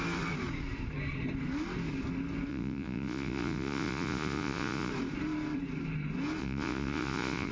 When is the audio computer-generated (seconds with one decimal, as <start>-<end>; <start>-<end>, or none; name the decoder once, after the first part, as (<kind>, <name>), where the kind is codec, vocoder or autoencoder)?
2.5-4.9 (vocoder, Vocos); 6.4-7.5